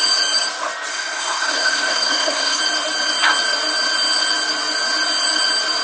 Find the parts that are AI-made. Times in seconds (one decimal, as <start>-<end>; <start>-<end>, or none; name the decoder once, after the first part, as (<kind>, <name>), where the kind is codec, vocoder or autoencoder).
0.9-2.6 (codec, SNAC)